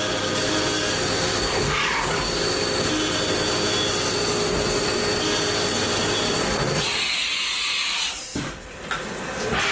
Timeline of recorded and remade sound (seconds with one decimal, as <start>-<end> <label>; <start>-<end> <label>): 0.0-1.3 recorded; 1.3-2.4 remade; 2.4-9.7 recorded